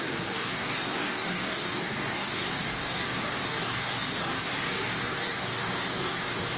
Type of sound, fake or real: fake